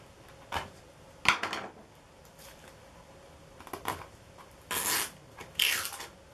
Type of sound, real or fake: real